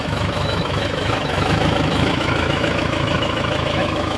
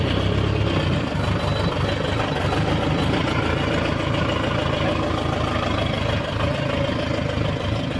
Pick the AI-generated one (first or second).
first